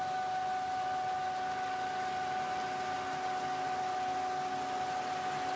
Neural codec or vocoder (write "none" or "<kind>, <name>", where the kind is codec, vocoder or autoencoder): none